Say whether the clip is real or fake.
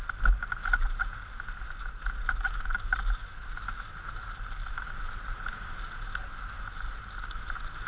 real